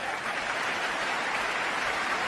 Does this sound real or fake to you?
fake